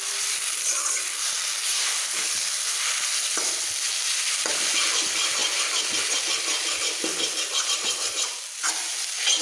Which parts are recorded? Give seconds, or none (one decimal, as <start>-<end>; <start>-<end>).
0.0-9.4

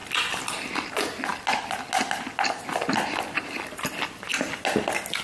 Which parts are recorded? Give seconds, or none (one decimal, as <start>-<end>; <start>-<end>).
0.0-5.2

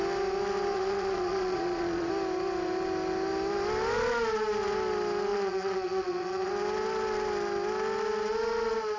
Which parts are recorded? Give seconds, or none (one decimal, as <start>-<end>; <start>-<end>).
0.0-0.7; 2.1-5.3; 6.5-9.0